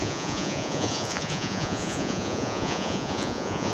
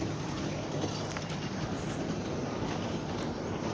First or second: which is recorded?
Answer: second